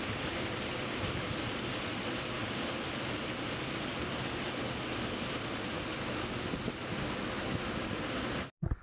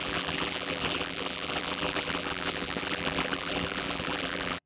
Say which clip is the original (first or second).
first